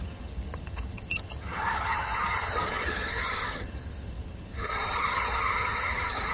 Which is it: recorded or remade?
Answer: remade